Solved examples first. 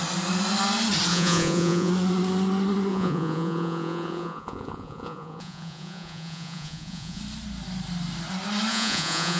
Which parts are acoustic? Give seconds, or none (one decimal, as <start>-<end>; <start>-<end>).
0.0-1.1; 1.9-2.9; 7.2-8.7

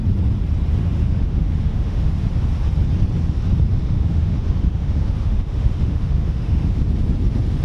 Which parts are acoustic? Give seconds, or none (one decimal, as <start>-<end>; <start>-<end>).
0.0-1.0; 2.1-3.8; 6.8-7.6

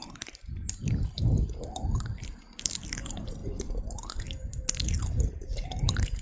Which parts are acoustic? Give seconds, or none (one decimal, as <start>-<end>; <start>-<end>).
3.4-5.3